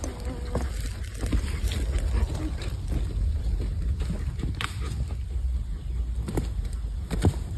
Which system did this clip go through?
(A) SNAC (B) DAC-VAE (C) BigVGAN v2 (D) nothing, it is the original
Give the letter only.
D